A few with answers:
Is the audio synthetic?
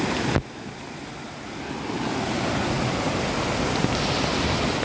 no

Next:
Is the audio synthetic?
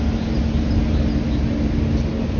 no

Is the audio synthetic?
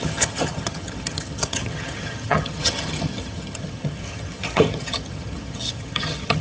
yes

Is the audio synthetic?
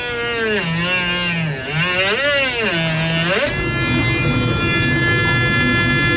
no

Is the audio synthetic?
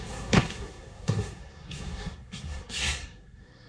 yes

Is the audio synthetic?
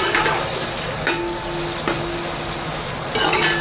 no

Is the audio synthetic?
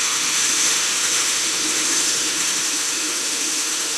yes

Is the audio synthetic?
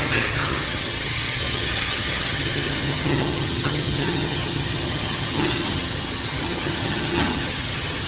yes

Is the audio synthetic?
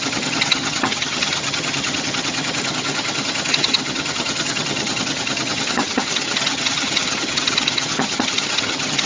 yes